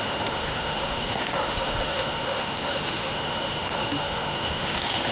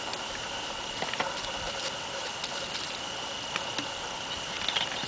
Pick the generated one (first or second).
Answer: first